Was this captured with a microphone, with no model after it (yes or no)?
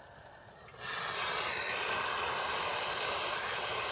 no